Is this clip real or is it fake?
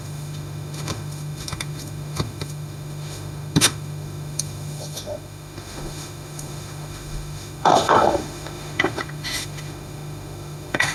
fake